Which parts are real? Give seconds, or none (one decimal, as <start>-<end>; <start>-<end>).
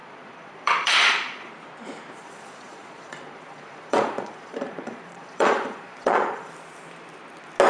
1.5-2.2; 6.5-7.7